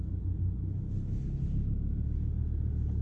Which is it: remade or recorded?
recorded